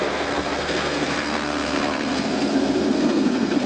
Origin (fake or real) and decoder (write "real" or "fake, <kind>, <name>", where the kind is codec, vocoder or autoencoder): fake, codec, SNAC